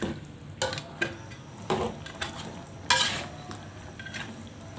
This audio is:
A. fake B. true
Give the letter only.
B